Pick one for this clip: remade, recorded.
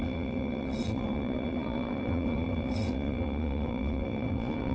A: remade